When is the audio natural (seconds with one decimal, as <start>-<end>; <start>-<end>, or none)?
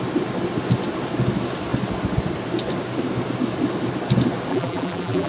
0.0-4.5